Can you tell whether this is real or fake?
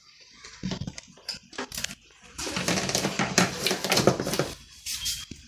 fake